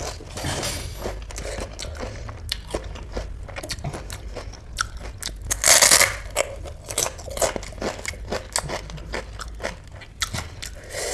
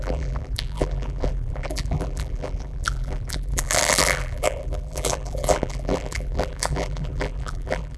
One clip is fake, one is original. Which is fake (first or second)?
second